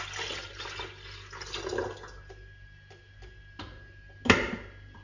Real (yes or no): yes